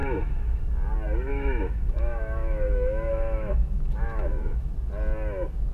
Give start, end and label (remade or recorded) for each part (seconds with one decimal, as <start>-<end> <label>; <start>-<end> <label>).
0.0-0.6 remade; 0.6-1.3 recorded; 1.3-4.7 remade; 4.7-5.7 recorded